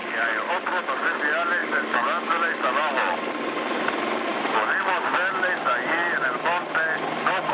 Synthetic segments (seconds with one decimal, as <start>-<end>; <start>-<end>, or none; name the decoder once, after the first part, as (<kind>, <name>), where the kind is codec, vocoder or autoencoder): 0.0-0.8 (vocoder, BigVGAN v2)

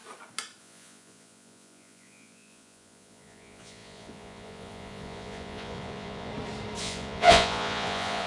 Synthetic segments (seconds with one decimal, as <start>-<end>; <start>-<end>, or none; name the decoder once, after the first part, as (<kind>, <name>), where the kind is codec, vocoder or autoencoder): 0.6-6.3 (vocoder, Vocos); 6.8-8.3

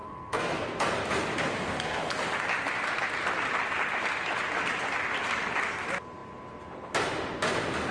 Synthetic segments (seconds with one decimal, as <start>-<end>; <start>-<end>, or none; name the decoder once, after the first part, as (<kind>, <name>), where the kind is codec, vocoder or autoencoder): 0.0-0.9 (codec, SNAC)

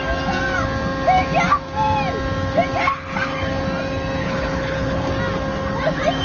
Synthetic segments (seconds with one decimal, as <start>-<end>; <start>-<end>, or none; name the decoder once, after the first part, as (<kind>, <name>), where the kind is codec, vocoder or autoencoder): 4.2-5.1 (codec, HILCodec)

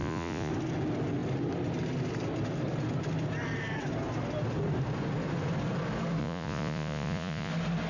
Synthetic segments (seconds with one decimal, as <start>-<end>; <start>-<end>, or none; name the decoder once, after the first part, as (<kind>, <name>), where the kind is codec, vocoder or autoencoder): 0.0-0.5 (vocoder, Vocos); 6.2-7.5

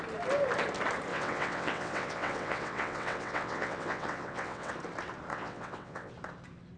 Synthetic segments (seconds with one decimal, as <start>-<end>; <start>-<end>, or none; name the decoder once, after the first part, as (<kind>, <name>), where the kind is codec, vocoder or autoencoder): 1.1-4.7 (vocoder, WaveNeXt); 5.3-6.1

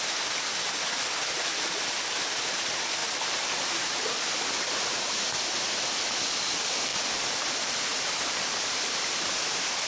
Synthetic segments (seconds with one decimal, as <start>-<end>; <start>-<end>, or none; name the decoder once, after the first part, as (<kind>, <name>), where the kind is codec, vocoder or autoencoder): 6.9-7.4 (vocoder, BigVGAN v2); 7.9-9.5